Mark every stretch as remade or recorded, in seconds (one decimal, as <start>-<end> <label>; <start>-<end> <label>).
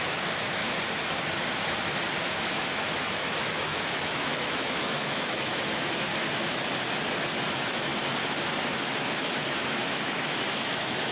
0.0-0.6 remade; 0.6-2.2 recorded; 2.2-6.1 remade; 6.1-7.5 recorded; 7.5-7.9 remade; 7.9-8.8 recorded; 8.8-11.1 remade